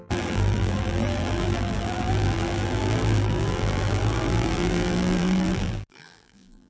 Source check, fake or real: fake